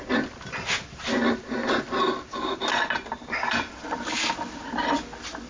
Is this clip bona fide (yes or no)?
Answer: yes